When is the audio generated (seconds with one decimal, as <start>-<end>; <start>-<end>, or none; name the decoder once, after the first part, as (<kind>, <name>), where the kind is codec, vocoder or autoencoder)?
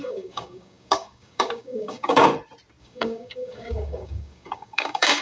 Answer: 0.0-2.3 (codec, DAC); 2.8-5.2